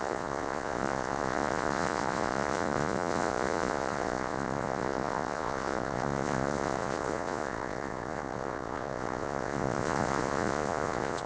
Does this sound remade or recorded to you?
remade